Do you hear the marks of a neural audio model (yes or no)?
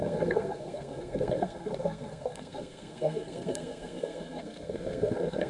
yes